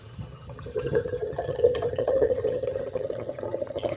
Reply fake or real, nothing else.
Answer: fake